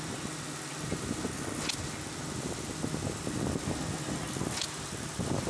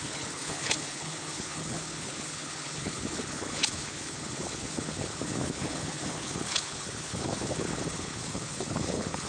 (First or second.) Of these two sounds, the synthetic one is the second